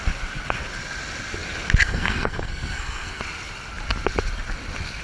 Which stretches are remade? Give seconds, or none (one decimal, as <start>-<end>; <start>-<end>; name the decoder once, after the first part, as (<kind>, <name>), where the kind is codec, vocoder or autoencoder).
1.8-3.2 (codec, SNAC)